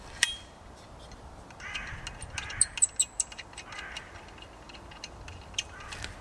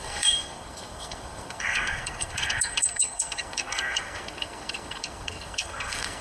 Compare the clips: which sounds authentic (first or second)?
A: first